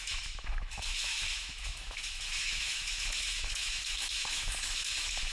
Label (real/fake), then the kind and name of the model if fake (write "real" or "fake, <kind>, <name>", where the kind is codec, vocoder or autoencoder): fake, autoencoder, DAC-VAE